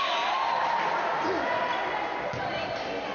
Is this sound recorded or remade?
recorded